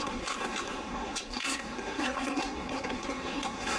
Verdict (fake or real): fake